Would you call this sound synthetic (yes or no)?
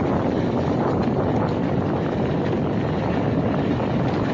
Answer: no